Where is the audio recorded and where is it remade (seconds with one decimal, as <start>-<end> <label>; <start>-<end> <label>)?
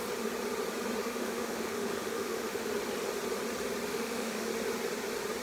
0.0-1.0 recorded; 1.0-2.7 remade; 2.7-3.9 recorded; 3.9-4.5 remade; 4.5-5.4 recorded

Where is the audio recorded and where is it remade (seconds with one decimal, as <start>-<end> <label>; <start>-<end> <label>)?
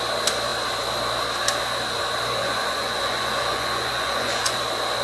0.0-2.4 recorded; 2.4-4.6 remade; 4.6-5.0 recorded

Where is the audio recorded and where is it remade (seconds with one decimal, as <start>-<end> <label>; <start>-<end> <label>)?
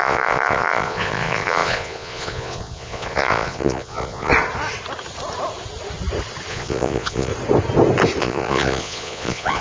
0.0-4.3 remade; 4.3-6.5 recorded; 6.5-7.3 remade; 7.3-8.2 recorded; 8.2-9.6 remade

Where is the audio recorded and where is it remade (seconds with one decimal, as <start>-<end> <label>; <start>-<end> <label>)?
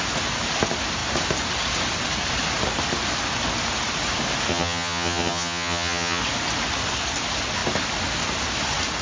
0.0-4.5 recorded; 4.5-6.2 remade; 6.2-9.0 recorded